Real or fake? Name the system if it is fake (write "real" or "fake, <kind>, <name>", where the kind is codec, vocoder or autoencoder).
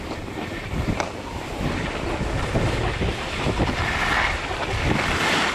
real